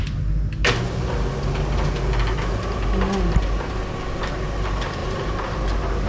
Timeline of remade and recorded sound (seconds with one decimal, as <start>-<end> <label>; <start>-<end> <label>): 0.0-6.1 recorded